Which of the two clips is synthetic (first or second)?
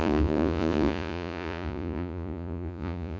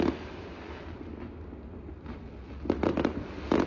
first